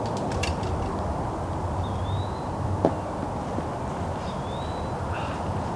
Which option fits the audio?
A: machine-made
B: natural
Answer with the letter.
B